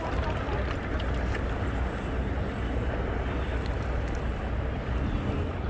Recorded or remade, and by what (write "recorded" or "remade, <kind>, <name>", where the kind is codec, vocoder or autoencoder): recorded